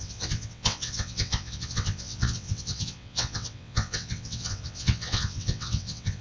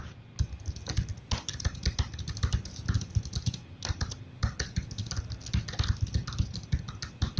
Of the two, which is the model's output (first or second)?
first